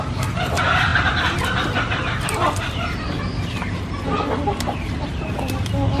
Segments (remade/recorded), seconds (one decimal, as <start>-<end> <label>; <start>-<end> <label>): 0.0-6.0 recorded